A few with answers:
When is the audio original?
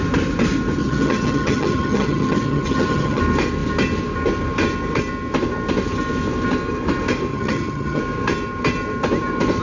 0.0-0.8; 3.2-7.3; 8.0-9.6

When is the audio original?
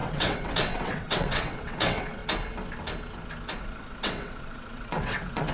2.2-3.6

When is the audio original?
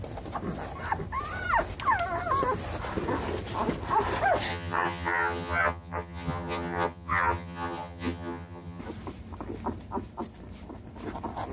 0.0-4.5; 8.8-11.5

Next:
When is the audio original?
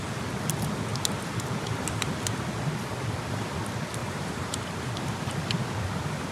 0.0-4.0; 4.9-6.3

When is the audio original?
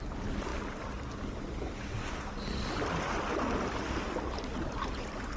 0.0-5.4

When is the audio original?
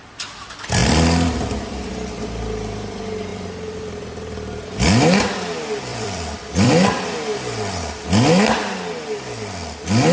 0.0-0.8; 1.9-3.3; 3.8-5.9; 6.7-10.1